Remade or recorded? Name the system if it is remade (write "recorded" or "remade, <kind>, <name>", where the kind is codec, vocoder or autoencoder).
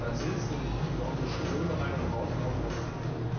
recorded